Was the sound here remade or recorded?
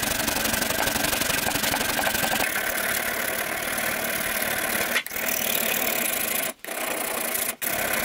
recorded